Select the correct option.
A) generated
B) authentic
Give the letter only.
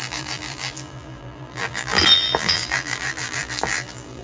A